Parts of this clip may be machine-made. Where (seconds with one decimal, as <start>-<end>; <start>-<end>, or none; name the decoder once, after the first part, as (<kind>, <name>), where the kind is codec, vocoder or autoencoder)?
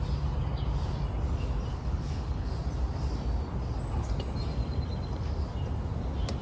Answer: 1.7-2.5 (codec, HILCodec)